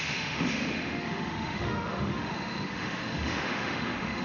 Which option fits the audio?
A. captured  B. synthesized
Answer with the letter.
B